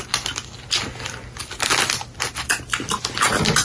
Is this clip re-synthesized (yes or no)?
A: no